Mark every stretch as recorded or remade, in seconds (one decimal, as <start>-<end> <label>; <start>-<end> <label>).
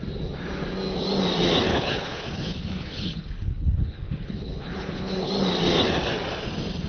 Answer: 0.0-1.7 recorded; 1.7-5.3 remade; 5.3-6.9 recorded